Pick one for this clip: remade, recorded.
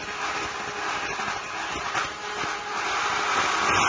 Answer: recorded